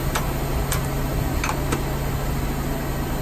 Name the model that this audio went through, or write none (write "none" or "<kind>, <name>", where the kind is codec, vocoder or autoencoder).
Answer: none